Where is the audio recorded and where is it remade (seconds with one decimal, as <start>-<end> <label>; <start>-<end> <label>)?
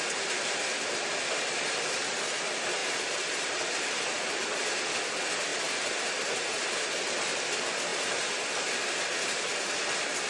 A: 0.0-2.8 recorded; 2.8-5.0 remade; 5.0-5.5 recorded; 5.5-7.0 remade; 7.0-10.3 recorded